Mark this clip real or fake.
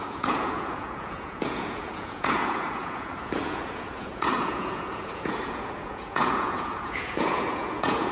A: fake